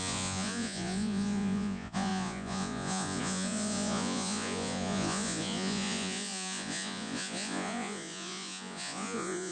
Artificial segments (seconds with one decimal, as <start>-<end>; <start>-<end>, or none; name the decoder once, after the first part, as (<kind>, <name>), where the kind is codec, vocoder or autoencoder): 0.0-9.5 (vocoder, Vocos)